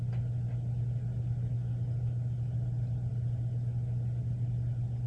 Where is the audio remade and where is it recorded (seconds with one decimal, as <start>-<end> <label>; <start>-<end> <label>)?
0.0-5.1 recorded